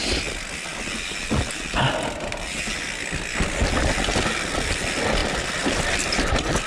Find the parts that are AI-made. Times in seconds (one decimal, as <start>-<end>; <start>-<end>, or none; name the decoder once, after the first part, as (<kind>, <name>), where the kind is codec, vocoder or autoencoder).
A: 5.2-5.8 (vocoder, BigVGAN v2)